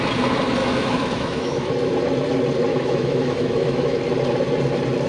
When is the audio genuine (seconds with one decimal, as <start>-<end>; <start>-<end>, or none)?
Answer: 0.0-0.6; 1.7-2.7; 4.0-5.1